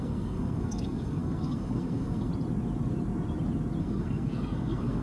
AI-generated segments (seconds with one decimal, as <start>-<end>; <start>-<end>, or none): 0.0-2.3; 3.8-5.0